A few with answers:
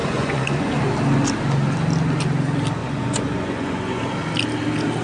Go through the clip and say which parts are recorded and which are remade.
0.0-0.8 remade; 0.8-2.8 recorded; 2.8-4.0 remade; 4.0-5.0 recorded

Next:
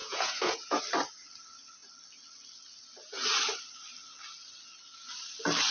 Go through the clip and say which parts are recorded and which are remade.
0.0-0.8 remade; 0.8-5.7 recorded

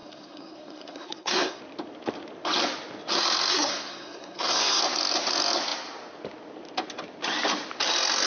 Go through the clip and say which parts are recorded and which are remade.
0.0-1.6 remade; 1.6-3.5 recorded; 3.5-4.8 remade; 4.8-8.3 recorded

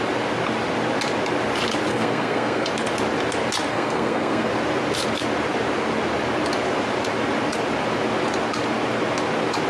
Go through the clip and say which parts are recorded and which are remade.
0.0-1.9 recorded; 1.9-2.7 remade; 2.7-3.7 recorded; 3.7-4.5 remade; 4.5-9.7 recorded

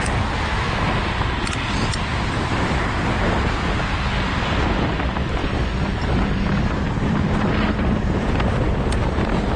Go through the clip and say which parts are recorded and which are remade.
0.0-5.4 recorded; 5.4-6.7 remade; 6.7-9.6 recorded